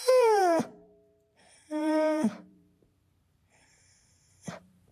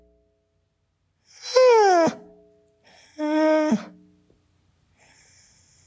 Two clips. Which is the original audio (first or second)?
second